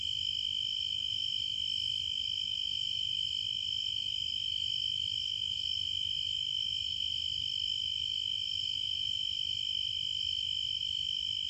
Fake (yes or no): no